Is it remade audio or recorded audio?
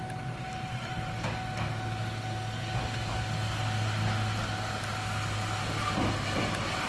recorded